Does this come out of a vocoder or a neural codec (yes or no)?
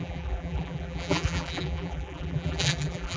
yes